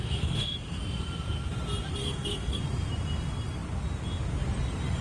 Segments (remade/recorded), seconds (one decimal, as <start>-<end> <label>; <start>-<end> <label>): 0.0-0.8 remade; 0.8-2.0 recorded; 2.0-2.6 remade; 2.6-5.0 recorded